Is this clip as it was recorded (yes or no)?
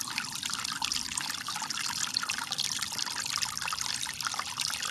yes